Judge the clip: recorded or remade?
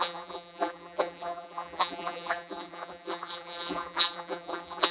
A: remade